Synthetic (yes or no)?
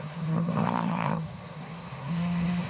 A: yes